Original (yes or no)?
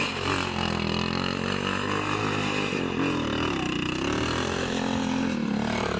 yes